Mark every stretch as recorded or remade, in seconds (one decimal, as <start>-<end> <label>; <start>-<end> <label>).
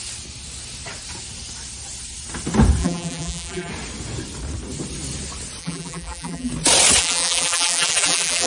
0.0-2.8 recorded; 2.8-3.7 remade; 3.7-5.6 recorded; 5.6-6.5 remade; 6.5-7.0 recorded; 7.0-8.5 remade